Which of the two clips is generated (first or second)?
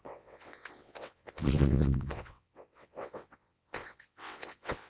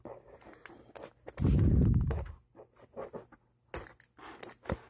first